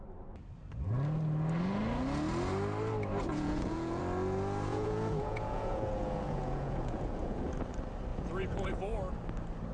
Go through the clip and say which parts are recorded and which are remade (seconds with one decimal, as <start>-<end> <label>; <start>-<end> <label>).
0.0-3.3 recorded; 3.3-4.0 remade; 4.0-4.7 recorded; 4.7-7.5 remade; 7.5-8.1 recorded; 8.1-8.8 remade; 8.8-9.7 recorded